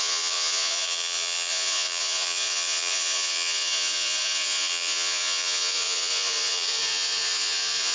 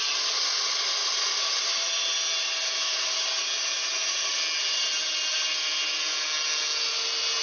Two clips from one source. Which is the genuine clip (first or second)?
second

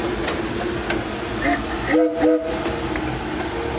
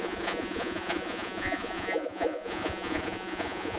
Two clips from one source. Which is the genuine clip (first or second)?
first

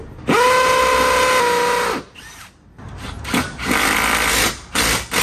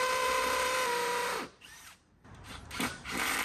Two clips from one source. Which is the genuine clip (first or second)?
first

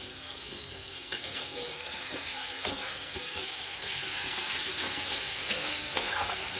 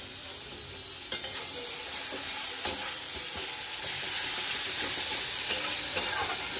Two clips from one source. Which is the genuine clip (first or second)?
second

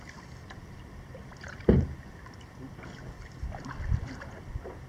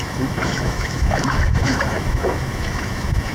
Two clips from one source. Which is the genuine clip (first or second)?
first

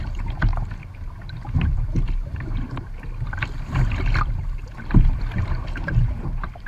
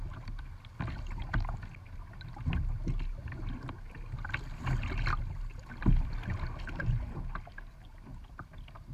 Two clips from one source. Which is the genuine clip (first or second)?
second